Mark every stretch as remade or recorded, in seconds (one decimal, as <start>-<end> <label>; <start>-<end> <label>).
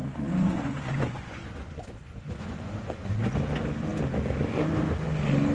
0.0-3.3 remade; 3.3-5.5 recorded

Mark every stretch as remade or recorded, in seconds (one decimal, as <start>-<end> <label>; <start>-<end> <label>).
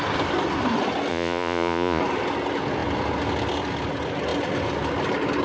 0.0-1.1 recorded; 1.1-2.0 remade; 2.0-5.4 recorded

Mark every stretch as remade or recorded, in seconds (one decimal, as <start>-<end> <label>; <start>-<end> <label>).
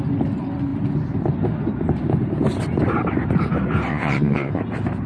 0.0-3.9 recorded; 3.9-4.6 remade; 4.6-5.1 recorded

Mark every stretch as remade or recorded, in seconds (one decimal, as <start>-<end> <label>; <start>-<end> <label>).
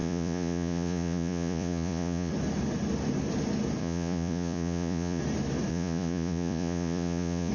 0.0-2.3 remade; 2.3-3.8 recorded; 3.8-5.2 remade; 5.2-5.7 recorded; 5.7-7.5 remade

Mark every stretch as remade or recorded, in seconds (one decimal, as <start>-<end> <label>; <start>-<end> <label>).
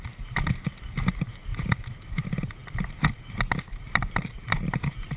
0.0-5.2 recorded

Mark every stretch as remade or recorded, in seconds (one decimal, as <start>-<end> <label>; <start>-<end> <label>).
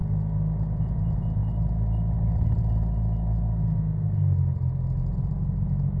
0.0-0.7 recorded; 0.7-1.4 remade; 1.4-5.0 recorded; 5.0-6.0 remade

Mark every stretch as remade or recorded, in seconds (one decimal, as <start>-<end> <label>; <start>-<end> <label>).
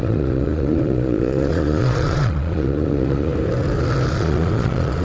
0.0-3.3 remade; 3.3-4.1 recorded; 4.1-5.0 remade